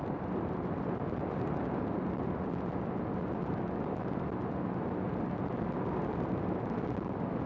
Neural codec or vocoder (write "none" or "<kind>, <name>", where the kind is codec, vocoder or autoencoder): none